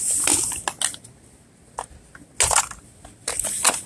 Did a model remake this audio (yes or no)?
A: no